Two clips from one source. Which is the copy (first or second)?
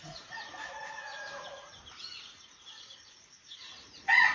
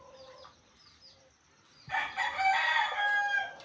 first